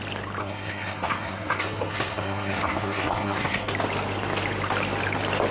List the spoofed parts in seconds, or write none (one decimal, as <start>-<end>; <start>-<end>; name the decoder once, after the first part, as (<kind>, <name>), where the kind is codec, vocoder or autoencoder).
0.4-3.7 (codec, SNAC)